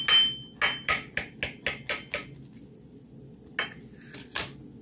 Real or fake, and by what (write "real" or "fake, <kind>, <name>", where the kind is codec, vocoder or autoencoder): real